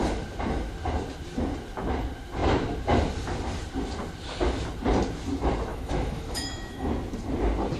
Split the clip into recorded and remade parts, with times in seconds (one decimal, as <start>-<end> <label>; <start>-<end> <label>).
0.0-5.7 recorded; 5.7-6.9 remade; 6.9-7.8 recorded